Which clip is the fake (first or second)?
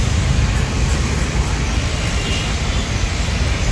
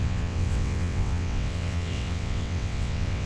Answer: second